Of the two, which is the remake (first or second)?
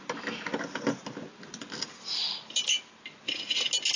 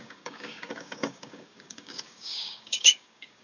second